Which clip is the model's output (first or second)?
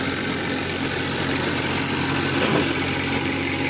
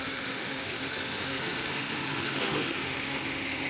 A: second